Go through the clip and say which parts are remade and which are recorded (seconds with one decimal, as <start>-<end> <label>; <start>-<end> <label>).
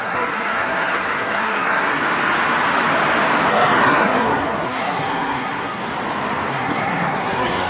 0.0-2.0 remade; 2.0-3.5 recorded; 3.5-5.8 remade; 5.8-6.5 recorded; 6.5-7.7 remade